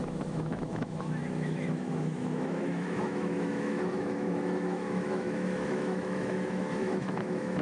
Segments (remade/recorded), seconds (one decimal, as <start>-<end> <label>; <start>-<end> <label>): 0.0-7.6 remade